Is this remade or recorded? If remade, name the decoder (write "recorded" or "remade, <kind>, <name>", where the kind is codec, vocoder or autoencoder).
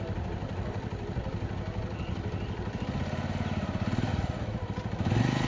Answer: recorded